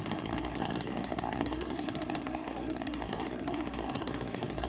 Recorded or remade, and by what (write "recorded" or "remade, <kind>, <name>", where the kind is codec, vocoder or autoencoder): remade, codec, SNAC